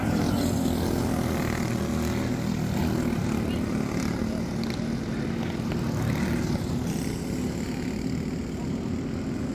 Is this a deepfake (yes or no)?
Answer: no